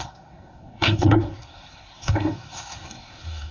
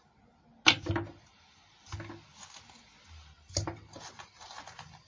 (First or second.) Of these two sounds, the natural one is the second